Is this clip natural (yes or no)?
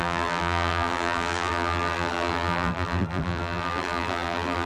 no